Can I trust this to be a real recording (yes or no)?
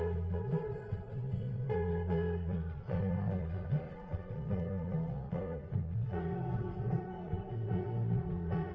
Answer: no